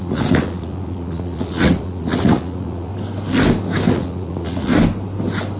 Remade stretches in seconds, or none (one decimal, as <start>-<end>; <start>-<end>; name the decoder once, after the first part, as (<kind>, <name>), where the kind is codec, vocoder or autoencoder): 0.0-2.9 (vocoder, Vocos); 3.9-4.7

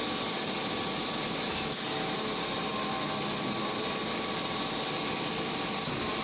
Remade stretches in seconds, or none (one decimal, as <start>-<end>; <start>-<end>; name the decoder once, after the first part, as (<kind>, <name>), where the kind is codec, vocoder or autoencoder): none